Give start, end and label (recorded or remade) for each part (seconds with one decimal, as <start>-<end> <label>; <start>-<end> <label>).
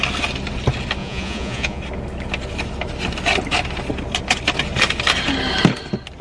0.0-1.0 recorded; 1.0-1.8 remade; 1.8-6.2 recorded